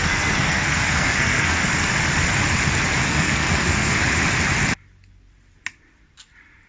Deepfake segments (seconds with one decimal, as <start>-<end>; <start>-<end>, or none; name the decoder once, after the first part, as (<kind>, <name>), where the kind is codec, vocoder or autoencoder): 0.0-1.6 (codec, SNAC); 3.1-4.0